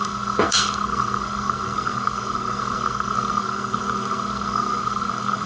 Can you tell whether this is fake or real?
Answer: fake